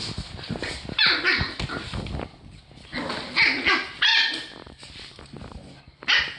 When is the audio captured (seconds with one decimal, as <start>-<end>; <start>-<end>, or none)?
0.0-4.1; 5.2-6.4